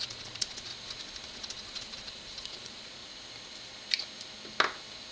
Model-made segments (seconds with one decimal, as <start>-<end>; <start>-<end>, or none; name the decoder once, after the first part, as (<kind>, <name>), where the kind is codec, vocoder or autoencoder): 0.0-0.7 (vocoder, Vocos); 1.3-3.0